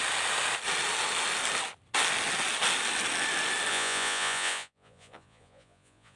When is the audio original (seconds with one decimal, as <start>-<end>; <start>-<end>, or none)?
0.0-3.7